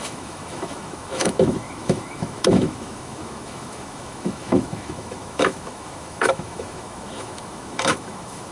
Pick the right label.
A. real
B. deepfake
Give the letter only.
B